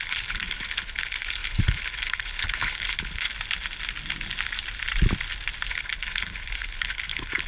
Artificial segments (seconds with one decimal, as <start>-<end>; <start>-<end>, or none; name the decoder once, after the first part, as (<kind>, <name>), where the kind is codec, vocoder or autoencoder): 0.0-3.3 (codec, HILCodec); 5.7-7.5

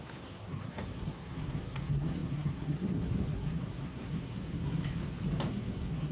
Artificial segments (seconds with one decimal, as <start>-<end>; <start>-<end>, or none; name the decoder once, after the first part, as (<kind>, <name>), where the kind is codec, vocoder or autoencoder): 0.0-5.0 (codec, SNAC); 5.5-6.1